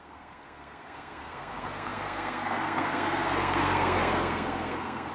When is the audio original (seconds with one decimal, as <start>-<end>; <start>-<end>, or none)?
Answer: none